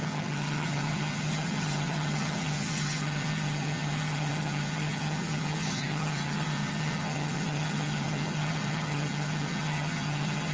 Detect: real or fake fake